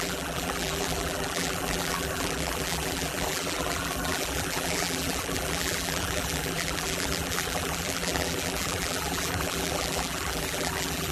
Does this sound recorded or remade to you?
remade